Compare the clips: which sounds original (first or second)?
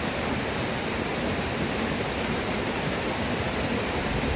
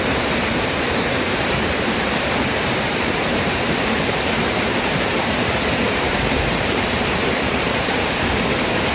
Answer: first